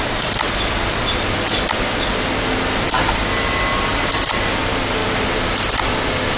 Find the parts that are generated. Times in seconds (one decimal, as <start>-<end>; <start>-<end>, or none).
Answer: none